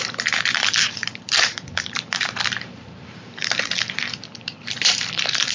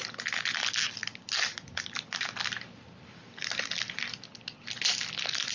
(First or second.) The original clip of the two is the second